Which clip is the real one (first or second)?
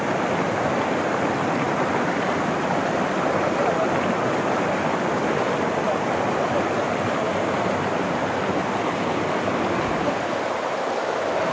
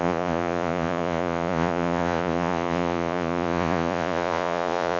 first